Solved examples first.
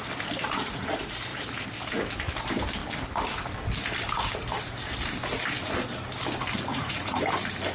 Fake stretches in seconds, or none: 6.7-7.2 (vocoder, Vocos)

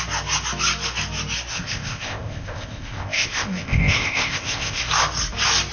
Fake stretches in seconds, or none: 1.5-4.8 (codec, ZipCodec)